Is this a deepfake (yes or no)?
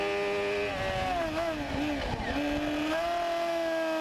no